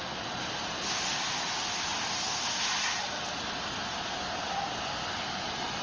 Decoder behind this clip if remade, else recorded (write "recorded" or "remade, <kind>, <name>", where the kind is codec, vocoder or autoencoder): recorded